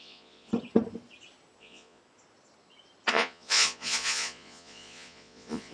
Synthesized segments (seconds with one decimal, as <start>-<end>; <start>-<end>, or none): 0.0-0.5; 1.6-2.0; 3.1-5.7